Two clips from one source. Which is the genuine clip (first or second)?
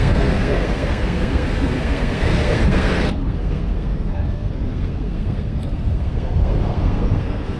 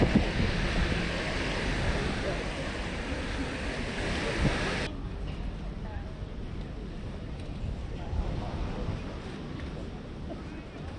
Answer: second